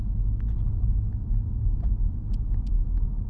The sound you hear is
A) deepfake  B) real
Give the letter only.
B